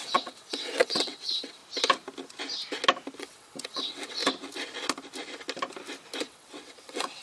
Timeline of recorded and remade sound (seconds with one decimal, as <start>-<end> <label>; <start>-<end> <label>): 0.0-1.6 remade; 1.6-3.2 recorded; 3.2-4.2 remade; 4.2-6.2 recorded; 6.2-7.2 remade

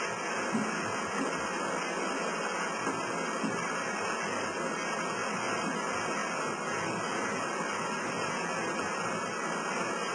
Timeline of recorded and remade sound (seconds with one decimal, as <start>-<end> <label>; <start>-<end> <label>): 0.0-10.1 recorded

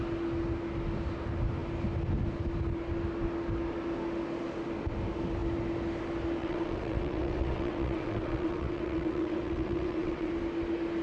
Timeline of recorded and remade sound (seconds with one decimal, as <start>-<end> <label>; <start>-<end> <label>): 0.0-6.4 recorded; 6.4-10.3 remade; 10.3-11.0 recorded

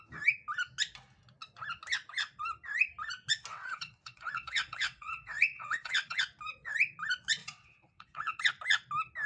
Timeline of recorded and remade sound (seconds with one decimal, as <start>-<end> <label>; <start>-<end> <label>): 0.0-3.5 recorded; 3.5-6.2 remade; 6.2-7.4 recorded; 7.4-8.4 remade; 8.4-9.3 recorded

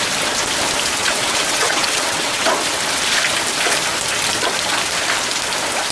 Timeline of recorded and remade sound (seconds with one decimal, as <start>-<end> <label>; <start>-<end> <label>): 0.0-1.0 recorded; 1.0-2.5 remade; 2.5-5.9 recorded

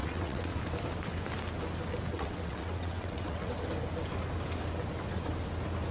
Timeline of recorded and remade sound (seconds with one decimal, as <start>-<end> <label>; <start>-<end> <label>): 0.0-0.6 remade; 0.6-2.1 recorded; 2.1-3.5 remade; 3.5-5.9 recorded

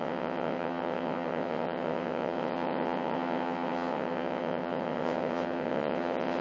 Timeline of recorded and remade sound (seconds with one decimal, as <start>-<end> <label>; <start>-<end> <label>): 0.0-6.4 remade